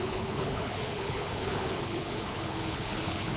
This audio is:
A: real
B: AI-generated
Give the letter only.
B